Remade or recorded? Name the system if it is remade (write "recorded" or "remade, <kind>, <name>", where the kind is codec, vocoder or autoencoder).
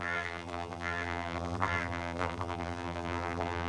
remade, vocoder, BigVGAN v2